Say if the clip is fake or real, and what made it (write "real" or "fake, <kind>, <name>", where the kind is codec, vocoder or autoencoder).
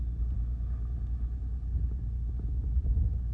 real